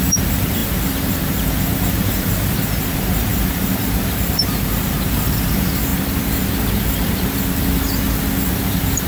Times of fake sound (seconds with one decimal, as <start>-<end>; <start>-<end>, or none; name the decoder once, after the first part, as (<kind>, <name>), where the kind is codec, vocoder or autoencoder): 0.0-5.9 (vocoder, BigVGAN v2); 8.5-9.1